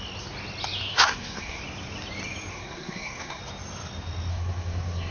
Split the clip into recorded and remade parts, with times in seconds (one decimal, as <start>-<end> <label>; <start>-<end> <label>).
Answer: 0.0-0.9 recorded; 0.9-1.6 remade; 1.6-2.5 recorded; 2.5-3.4 remade; 3.4-4.3 recorded; 4.3-5.1 remade